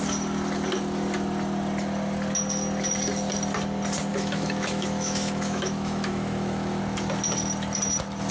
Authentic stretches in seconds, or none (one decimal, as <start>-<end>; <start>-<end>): 0.0-4.1; 6.8-8.3